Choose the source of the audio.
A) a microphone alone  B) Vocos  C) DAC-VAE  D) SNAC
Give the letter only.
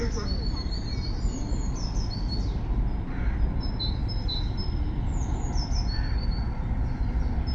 A